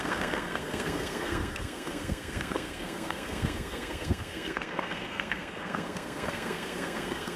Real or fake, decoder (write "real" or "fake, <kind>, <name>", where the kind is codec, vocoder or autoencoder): fake, codec, SNAC